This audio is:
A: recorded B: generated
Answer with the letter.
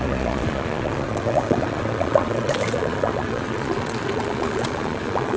B